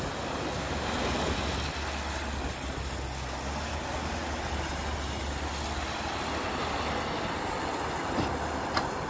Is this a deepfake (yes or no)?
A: no